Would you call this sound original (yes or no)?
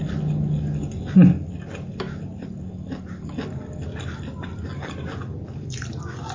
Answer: yes